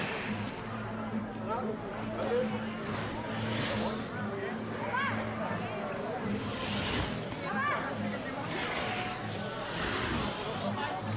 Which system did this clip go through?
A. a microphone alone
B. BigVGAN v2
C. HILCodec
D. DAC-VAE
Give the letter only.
A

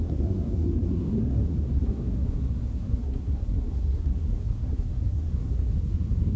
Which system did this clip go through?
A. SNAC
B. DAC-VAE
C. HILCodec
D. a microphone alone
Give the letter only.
A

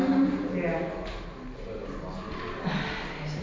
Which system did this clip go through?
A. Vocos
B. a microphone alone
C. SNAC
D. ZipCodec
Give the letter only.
B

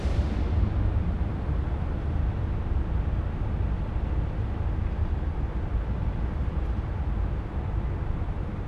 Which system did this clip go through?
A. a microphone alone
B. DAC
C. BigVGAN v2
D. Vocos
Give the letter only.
A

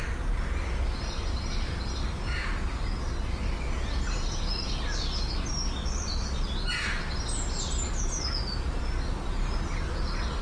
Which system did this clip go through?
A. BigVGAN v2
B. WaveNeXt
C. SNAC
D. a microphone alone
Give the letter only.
D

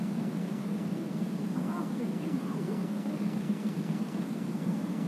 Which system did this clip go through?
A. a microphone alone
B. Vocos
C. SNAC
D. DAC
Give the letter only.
C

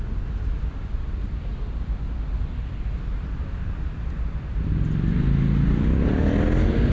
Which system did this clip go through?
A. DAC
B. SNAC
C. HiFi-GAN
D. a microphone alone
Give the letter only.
D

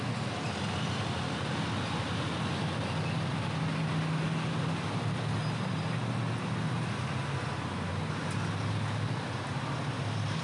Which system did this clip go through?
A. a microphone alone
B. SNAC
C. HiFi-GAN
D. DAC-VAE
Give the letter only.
A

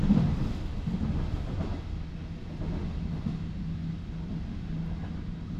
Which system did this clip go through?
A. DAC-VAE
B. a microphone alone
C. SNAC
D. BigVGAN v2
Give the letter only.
B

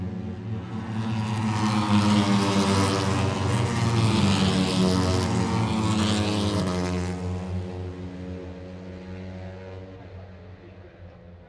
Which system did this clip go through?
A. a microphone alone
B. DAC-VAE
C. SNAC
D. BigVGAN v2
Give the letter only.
A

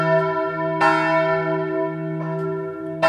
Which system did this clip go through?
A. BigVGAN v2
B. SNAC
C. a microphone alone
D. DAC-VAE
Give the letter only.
C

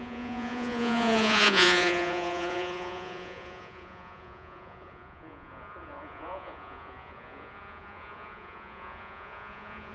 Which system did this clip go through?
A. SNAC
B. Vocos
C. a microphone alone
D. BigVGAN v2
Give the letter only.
B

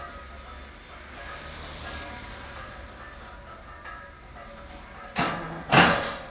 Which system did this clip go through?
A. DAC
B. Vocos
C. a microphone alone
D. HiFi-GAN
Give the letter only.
C